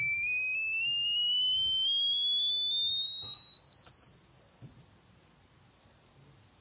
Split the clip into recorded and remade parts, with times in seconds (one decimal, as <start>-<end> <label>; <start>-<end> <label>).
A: 0.0-6.6 recorded